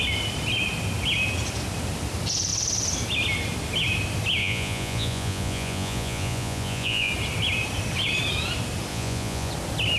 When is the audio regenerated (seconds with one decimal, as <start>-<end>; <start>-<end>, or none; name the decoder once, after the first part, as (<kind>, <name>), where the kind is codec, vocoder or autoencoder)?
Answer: 4.4-7.1 (vocoder, Vocos); 8.9-9.5